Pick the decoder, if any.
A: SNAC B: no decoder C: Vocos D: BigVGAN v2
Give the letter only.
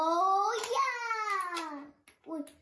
B